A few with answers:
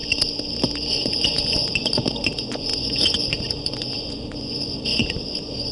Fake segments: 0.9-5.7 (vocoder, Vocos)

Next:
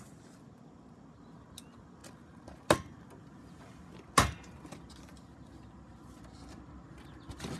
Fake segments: none

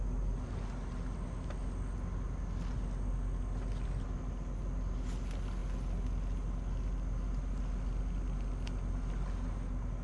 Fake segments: none

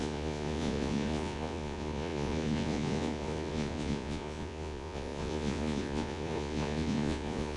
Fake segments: 0.0-7.6 (vocoder, Vocos)